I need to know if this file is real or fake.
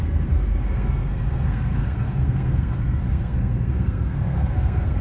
fake